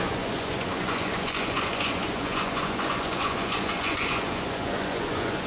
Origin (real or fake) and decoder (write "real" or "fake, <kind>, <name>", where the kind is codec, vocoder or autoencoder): fake, vocoder, Vocos